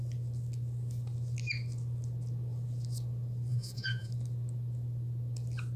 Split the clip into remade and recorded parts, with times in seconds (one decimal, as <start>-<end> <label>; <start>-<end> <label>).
0.0-3.5 recorded; 3.5-4.1 remade; 4.1-5.8 recorded